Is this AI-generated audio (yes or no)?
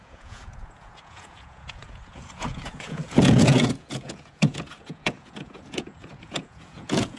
yes